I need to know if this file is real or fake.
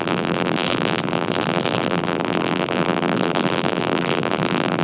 fake